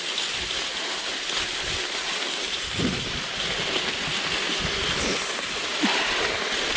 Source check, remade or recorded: recorded